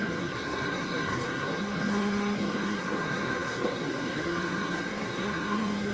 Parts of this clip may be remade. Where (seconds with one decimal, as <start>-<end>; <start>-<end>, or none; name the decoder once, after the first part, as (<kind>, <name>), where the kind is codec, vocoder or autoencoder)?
0.0-5.9 (codec, SNAC)